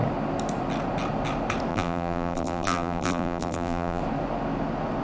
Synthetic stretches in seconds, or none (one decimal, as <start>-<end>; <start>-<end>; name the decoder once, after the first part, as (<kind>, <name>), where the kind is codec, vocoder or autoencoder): 1.7-4.0 (vocoder, BigVGAN v2)